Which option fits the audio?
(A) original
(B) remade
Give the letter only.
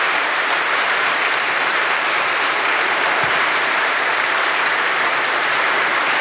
B